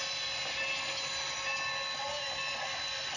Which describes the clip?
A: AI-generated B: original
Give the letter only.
B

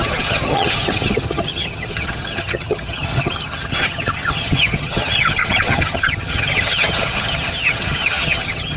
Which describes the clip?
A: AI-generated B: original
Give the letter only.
A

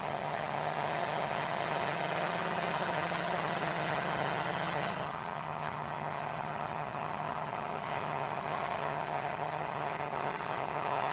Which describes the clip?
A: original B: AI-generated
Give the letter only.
B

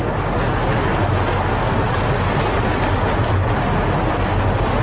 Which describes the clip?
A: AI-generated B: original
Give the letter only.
B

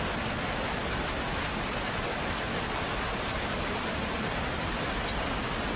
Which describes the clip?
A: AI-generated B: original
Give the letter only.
B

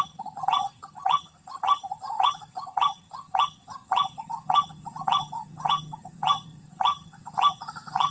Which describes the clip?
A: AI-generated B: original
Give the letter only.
A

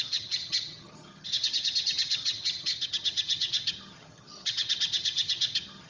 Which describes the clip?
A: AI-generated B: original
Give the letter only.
A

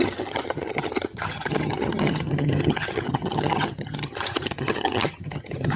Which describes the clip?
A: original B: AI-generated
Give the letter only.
B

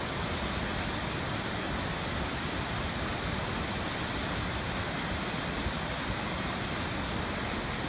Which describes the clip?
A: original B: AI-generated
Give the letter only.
A